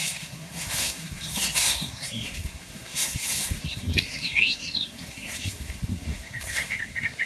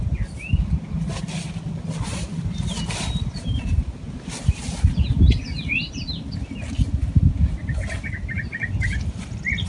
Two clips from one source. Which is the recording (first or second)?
second